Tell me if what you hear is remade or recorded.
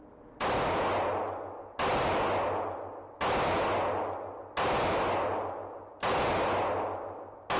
recorded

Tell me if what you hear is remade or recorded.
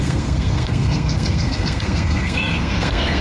remade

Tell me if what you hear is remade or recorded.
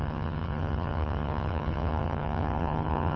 remade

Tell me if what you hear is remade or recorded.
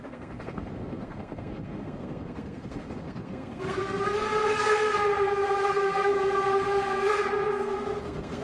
remade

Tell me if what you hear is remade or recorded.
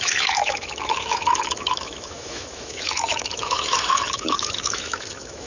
remade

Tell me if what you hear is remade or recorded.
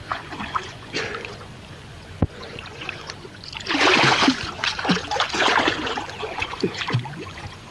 remade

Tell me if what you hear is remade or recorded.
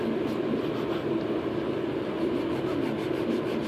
recorded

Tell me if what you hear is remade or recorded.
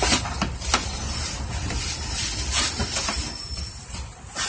recorded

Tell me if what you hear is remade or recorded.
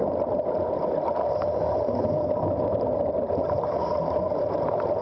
recorded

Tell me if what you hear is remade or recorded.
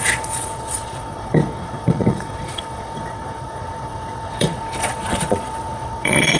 remade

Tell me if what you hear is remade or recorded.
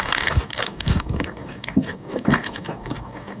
remade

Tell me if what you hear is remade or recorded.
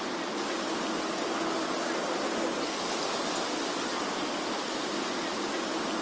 recorded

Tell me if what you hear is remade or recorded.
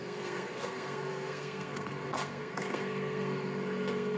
remade